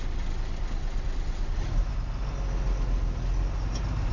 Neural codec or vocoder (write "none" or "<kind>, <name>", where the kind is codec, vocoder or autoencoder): none